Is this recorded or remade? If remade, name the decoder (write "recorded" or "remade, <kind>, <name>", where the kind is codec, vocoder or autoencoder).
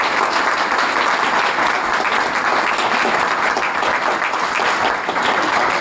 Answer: recorded